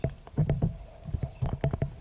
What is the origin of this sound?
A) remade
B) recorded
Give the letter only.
B